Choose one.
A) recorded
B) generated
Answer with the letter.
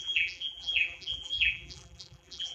B